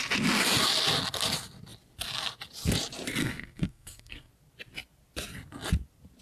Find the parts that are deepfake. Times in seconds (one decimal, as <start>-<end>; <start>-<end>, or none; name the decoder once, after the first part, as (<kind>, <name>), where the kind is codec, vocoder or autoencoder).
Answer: 3.2-4.3 (codec, SNAC)